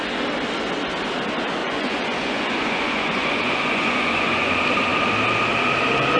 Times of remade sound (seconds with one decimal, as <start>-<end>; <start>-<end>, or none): 1.6-4.5